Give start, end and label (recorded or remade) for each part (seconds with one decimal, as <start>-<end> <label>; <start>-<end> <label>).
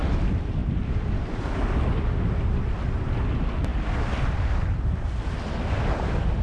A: 0.0-0.6 recorded; 0.6-3.2 remade; 3.2-6.4 recorded